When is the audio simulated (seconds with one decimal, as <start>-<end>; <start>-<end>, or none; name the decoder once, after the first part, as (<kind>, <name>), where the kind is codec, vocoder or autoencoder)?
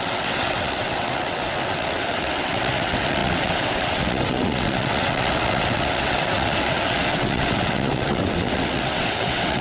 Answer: 0.0-9.6 (vocoder, WaveNeXt)